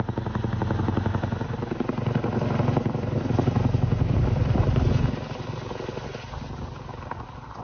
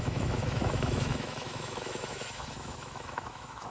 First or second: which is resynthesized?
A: second